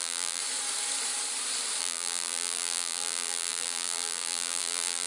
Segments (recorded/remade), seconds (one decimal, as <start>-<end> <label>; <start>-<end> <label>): 0.0-0.4 remade; 0.4-1.8 recorded; 1.8-5.1 remade